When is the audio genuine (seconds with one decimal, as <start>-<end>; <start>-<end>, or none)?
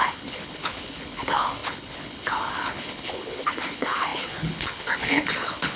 none